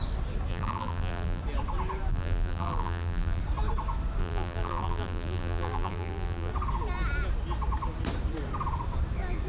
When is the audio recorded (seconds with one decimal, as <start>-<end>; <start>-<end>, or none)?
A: 0.0-0.5; 1.4-2.1; 3.4-4.2; 6.5-9.5